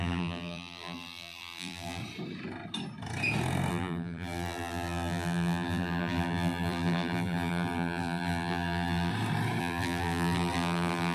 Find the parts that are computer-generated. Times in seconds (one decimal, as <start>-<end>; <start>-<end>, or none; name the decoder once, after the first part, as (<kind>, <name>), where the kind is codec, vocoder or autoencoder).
0.0-2.0 (vocoder, BigVGAN v2); 3.7-9.1; 9.6-11.1